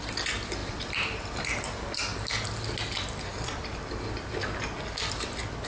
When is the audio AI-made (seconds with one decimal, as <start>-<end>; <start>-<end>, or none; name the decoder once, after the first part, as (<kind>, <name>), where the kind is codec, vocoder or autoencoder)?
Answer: 0.6-2.0 (vocoder, BigVGAN v2); 3.3-5.0